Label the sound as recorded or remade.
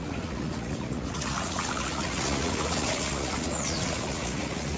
remade